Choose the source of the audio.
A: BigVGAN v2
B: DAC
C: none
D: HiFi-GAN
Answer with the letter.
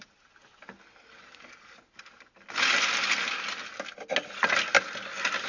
C